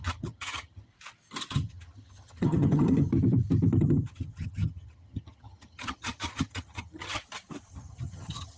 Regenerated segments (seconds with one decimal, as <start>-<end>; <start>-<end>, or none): 0.0-0.9; 1.5-3.1; 3.8-7.2; 7.7-8.6